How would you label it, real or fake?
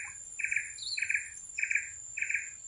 real